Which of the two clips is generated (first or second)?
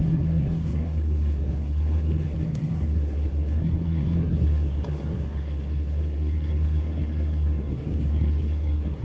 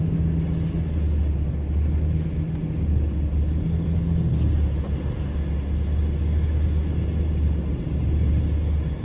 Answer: first